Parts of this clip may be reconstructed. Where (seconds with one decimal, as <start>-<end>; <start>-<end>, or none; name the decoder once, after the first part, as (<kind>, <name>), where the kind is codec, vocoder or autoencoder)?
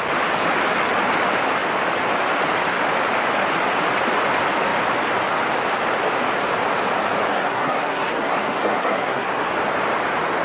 7.3-9.5 (codec, SNAC)